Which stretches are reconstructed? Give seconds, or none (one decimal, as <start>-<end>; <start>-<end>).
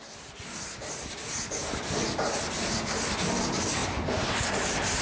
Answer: none